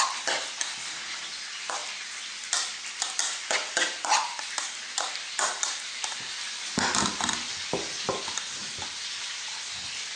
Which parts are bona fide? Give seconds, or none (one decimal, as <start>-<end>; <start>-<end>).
0.0-10.2